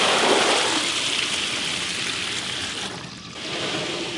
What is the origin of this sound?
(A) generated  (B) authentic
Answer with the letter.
B